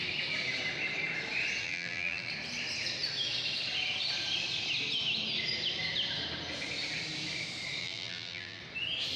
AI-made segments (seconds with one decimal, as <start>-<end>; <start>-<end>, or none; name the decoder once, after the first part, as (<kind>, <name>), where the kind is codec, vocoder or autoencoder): 1.6-2.3 (vocoder, BigVGAN v2); 7.8-8.6